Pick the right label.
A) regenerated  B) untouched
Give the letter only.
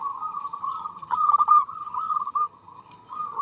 A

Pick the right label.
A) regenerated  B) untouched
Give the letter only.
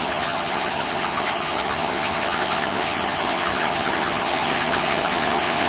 A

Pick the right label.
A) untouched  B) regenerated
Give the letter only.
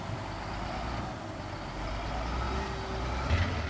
A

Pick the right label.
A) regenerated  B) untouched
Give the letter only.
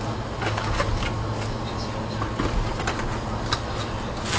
B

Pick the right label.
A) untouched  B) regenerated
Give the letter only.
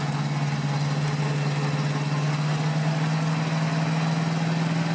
A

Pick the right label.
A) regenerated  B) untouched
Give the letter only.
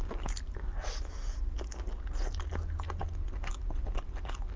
B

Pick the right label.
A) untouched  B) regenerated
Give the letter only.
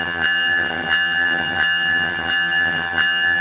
B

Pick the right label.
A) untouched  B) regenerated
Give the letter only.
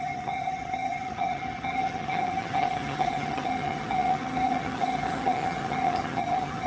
B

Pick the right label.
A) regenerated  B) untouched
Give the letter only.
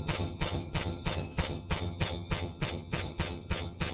A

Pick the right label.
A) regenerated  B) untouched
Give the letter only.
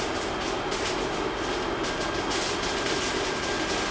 B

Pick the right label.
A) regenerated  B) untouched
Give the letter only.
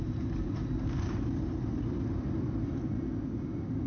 B